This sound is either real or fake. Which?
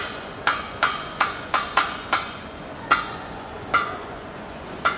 fake